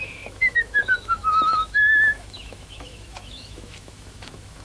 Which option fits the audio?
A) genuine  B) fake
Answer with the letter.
B